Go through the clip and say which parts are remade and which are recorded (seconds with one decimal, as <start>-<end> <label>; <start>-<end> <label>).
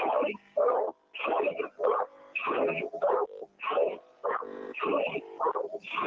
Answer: 0.0-2.4 recorded; 2.4-2.9 remade; 2.9-3.5 recorded; 3.5-4.8 remade; 4.8-6.1 recorded